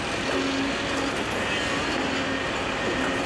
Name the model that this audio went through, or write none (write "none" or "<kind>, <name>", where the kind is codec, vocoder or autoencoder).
none